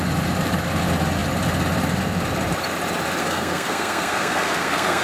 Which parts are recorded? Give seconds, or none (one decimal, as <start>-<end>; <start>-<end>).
0.0-3.2